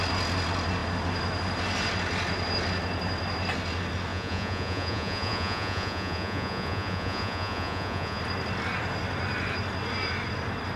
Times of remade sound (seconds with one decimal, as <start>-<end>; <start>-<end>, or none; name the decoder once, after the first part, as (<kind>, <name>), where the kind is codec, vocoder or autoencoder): 4.1-8.2 (vocoder, Vocos)